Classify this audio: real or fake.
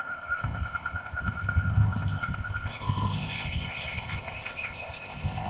fake